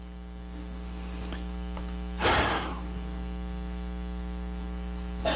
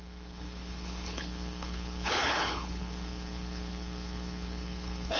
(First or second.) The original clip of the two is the first